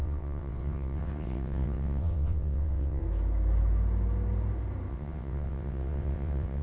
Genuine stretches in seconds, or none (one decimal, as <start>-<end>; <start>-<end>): 3.0-4.9